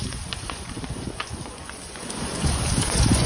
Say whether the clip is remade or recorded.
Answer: remade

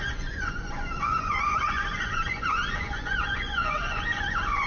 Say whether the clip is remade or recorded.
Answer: remade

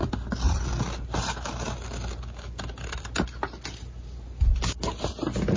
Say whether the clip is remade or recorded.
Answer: recorded